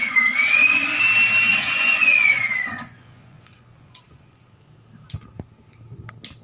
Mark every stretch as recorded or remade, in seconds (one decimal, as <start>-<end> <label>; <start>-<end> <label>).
0.0-1.0 remade; 1.0-1.5 recorded; 1.5-4.5 remade; 4.5-6.4 recorded